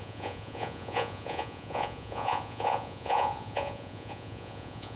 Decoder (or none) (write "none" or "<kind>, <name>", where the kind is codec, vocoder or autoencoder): vocoder, Vocos